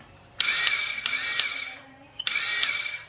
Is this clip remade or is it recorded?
remade